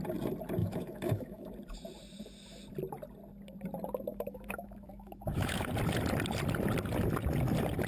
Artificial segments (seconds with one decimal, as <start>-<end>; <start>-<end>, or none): 0.6-1.5; 4.1-5.7